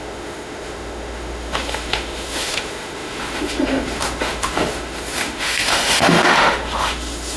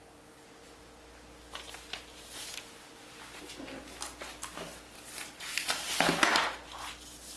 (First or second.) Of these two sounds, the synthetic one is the first